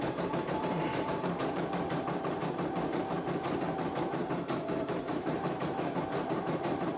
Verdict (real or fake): fake